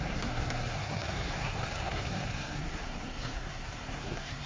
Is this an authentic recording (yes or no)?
no